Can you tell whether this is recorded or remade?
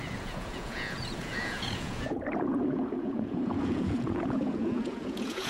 remade